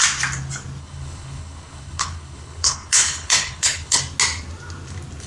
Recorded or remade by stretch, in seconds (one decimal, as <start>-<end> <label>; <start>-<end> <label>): 0.0-0.8 recorded; 0.8-4.0 remade; 4.0-5.3 recorded